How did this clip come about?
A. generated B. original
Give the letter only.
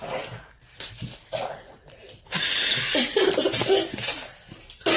B